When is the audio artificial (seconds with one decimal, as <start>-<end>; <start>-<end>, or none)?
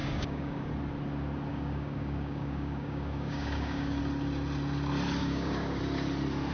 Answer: 0.0-0.7; 1.5-4.0; 5.2-5.8